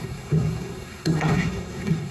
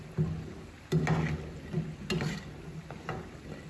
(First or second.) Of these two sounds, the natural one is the second